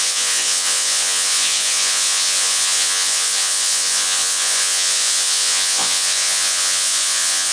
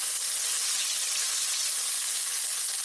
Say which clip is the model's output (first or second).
first